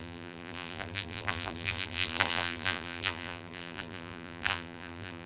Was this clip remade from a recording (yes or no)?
yes